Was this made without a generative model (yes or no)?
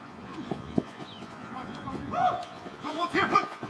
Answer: no